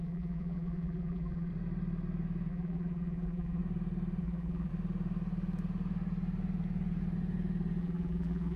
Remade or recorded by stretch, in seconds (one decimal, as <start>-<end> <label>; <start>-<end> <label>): 0.0-1.5 remade; 1.5-2.5 recorded; 2.5-3.6 remade; 3.6-4.2 recorded; 4.2-4.7 remade; 4.7-7.8 recorded; 7.8-8.6 remade